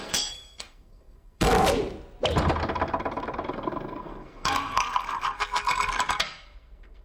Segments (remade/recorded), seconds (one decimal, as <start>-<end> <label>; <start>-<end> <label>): 0.0-1.5 remade; 1.5-3.5 recorded; 3.5-7.0 remade